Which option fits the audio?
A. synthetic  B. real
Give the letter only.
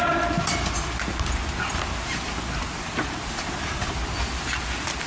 B